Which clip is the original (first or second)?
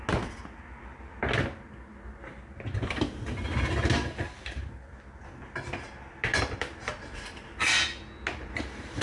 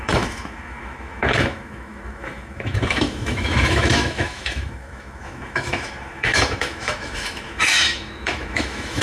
first